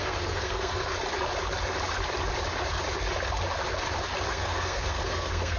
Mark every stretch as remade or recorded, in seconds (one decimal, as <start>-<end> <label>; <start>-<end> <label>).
0.0-0.9 remade; 0.9-4.3 recorded; 4.3-5.6 remade